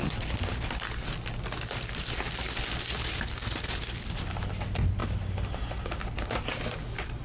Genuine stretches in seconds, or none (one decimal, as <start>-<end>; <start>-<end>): 0.0-5.0; 5.8-7.2